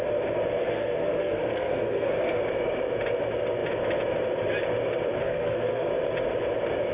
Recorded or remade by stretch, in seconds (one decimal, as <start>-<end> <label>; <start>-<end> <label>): 0.0-0.6 recorded; 0.6-2.4 remade; 2.4-5.2 recorded; 5.2-5.9 remade; 5.9-6.9 recorded